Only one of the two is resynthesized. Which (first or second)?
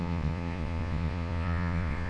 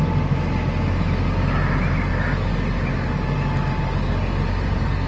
first